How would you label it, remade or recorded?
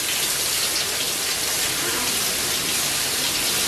recorded